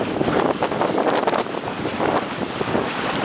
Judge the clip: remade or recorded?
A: recorded